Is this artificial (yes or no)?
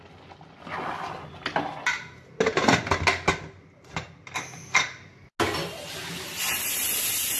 no